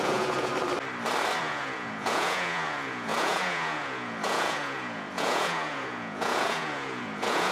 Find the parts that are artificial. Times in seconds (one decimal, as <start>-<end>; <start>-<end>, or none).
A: 0.0-0.5; 1.4-7.5